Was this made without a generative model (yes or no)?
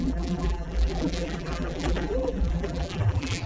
no